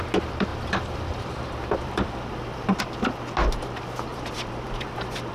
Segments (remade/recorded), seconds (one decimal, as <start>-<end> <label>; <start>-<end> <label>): 0.0-0.5 recorded; 0.5-2.8 remade; 2.8-4.1 recorded; 4.1-5.3 remade